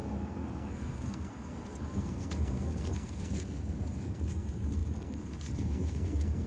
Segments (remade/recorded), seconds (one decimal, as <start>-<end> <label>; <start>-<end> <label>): 0.0-6.5 remade